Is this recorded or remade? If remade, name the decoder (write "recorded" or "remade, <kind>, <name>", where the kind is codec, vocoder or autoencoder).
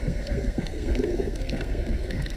remade, codec, SNAC